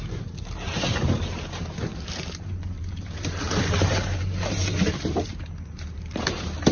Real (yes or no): no